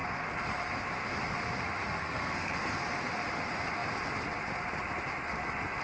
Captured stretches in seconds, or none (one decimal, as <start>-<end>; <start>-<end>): 0.0-1.8; 2.5-5.8